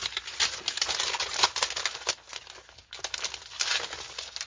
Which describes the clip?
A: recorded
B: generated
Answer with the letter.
A